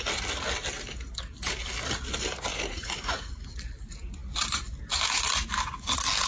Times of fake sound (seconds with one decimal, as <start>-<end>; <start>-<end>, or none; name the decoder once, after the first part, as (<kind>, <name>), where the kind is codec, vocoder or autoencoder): 2.5-3.3 (vocoder, Vocos)

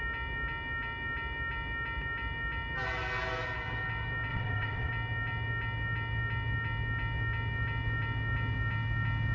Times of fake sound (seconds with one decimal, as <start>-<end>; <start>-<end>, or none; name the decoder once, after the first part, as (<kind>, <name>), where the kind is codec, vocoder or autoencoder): 4.3-4.9 (vocoder, WaveNeXt)

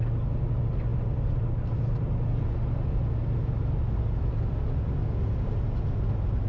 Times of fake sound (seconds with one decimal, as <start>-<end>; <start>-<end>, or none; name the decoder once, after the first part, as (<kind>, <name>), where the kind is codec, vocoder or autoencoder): none

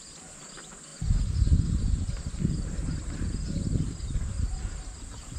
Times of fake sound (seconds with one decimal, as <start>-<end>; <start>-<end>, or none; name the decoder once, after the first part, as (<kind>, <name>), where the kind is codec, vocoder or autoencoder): none

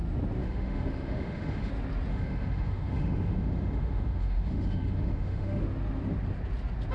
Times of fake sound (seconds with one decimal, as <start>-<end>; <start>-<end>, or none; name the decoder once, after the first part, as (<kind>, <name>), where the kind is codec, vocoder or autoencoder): 0.4-1.7 (autoencoder, DAC-VAE); 2.1-5.6